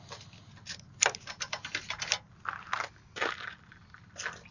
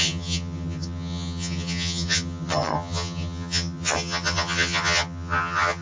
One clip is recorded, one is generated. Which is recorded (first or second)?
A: first